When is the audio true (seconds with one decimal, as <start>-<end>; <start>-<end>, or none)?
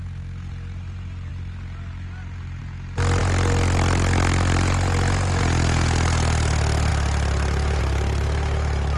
0.0-9.0